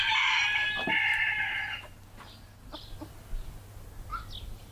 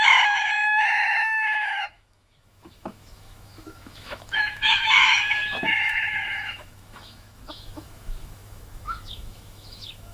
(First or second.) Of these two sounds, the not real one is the second